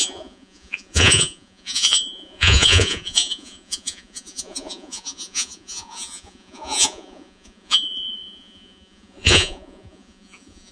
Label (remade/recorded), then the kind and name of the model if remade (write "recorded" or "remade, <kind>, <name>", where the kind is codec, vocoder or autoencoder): remade, vocoder, Vocos